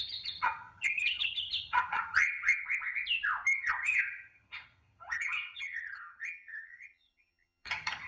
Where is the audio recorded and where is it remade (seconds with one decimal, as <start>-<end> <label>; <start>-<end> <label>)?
0.0-2.6 remade; 2.6-3.6 recorded; 3.6-8.1 remade